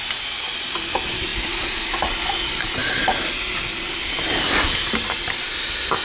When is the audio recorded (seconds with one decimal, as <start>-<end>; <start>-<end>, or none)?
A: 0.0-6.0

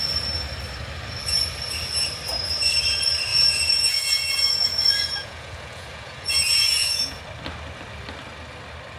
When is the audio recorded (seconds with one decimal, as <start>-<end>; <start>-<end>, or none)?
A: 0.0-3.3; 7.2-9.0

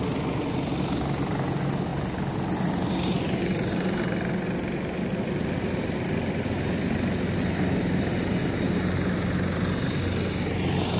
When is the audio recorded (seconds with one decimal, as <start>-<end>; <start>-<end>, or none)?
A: 0.0-11.0

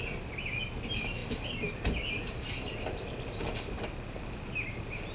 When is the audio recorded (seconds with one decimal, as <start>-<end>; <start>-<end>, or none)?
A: 0.0-5.1

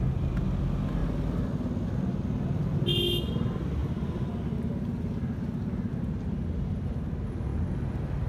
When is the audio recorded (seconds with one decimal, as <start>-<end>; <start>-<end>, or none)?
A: 0.0-7.5